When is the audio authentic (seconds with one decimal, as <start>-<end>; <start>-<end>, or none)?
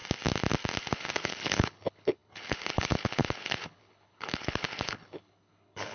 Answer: 0.0-0.9